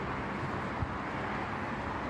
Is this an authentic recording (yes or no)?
yes